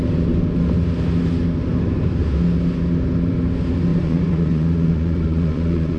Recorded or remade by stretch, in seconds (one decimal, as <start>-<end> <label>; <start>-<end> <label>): 0.0-3.9 recorded; 3.9-6.0 remade